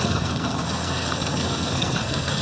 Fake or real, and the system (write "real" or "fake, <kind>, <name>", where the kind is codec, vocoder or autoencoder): fake, codec, SNAC